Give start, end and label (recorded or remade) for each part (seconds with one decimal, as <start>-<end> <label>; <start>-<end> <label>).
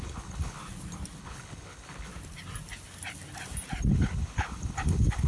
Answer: 0.0-0.6 remade; 0.6-1.2 recorded; 1.2-2.1 remade; 2.1-3.9 recorded; 3.9-5.3 remade